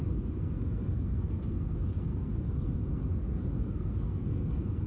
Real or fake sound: fake